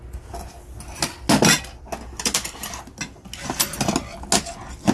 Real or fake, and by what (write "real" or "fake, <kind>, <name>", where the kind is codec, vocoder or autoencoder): real